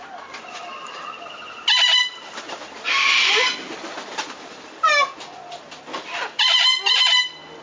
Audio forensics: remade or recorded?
recorded